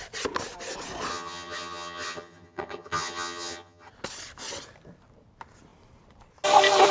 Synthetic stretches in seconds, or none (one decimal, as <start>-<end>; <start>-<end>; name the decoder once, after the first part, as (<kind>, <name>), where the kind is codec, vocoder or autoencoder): 1.1-3.9 (vocoder, HiFi-GAN)